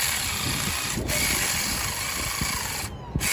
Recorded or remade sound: recorded